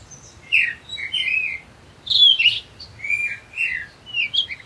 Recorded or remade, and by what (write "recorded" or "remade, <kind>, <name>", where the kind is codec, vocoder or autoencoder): recorded